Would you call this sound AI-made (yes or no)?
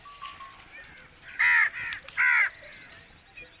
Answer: no